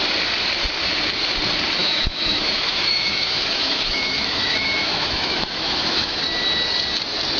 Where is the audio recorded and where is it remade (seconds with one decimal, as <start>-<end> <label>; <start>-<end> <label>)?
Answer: 0.0-1.8 recorded; 1.8-6.2 remade; 6.2-7.4 recorded